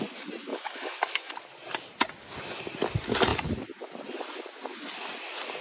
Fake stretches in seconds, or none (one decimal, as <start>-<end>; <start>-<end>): 0.5-1.3